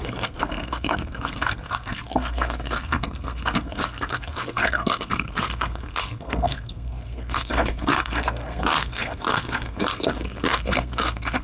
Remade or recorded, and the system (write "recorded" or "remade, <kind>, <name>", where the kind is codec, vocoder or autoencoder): remade, codec, SNAC